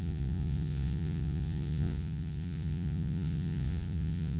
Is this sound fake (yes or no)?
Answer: yes